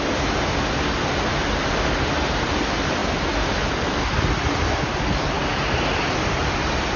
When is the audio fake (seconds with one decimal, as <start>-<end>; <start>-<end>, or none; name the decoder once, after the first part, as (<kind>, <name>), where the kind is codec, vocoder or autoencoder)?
none